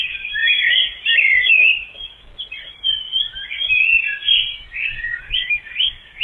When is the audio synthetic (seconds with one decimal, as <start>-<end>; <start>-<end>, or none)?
0.0-0.4; 1.5-2.3; 5.2-6.2